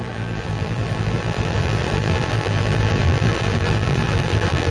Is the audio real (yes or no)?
no